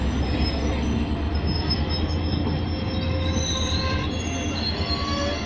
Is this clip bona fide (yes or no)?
yes